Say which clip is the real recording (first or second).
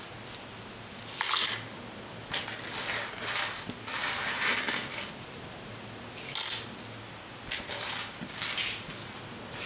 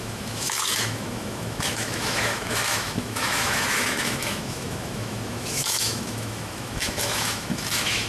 first